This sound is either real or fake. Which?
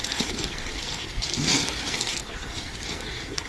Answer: fake